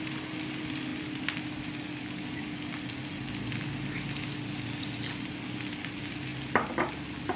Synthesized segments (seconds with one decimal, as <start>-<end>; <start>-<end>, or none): none